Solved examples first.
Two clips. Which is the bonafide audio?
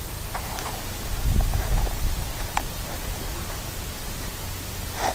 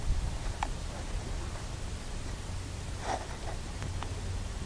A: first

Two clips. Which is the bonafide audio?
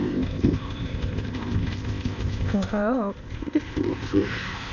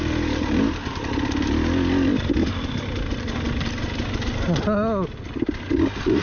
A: second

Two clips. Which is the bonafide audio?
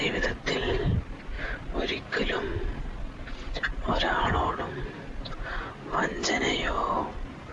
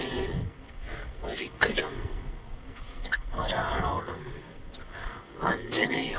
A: first